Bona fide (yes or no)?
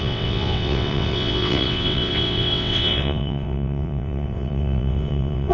no